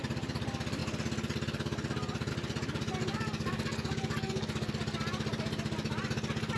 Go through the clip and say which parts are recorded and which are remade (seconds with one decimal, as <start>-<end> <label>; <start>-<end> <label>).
0.0-3.0 recorded; 3.0-4.7 remade; 4.7-6.6 recorded